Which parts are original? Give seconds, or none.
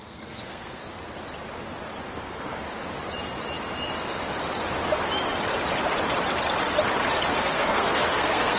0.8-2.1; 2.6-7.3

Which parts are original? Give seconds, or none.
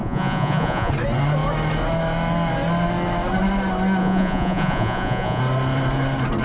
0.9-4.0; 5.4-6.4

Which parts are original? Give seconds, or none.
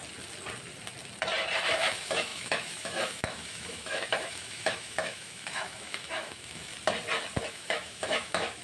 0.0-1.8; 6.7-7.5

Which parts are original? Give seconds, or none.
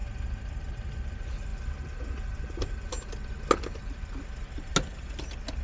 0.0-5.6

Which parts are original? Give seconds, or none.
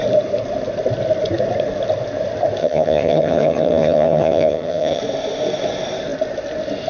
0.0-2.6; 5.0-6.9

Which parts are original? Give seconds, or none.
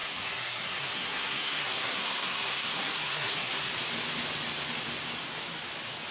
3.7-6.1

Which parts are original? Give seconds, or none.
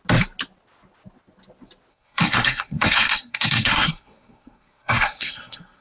0.0-1.9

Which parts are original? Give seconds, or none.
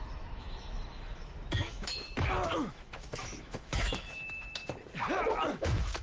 4.6-5.5